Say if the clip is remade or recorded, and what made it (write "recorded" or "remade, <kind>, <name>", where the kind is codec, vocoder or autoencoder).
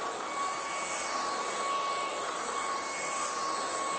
recorded